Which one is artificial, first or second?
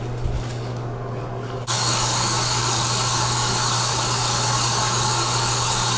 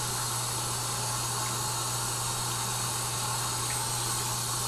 first